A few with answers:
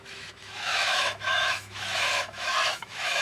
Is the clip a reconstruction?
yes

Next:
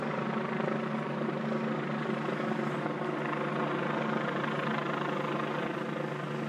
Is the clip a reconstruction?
no